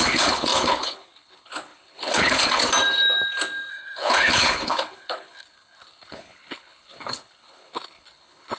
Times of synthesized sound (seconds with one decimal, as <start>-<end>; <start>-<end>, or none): 0.0-2.6; 3.7-8.6